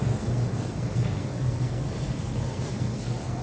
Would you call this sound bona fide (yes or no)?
no